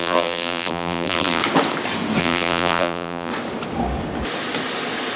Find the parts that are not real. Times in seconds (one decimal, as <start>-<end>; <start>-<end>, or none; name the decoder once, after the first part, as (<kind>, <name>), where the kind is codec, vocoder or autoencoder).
0.0-1.4 (vocoder, BigVGAN v2); 2.2-3.3